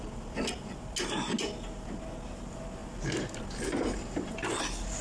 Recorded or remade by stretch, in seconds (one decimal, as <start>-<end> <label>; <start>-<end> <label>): 0.0-5.0 recorded